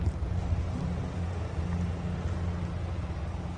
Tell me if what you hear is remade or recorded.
recorded